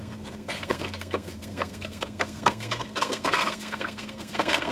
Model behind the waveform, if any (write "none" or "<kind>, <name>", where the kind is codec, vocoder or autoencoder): codec, SNAC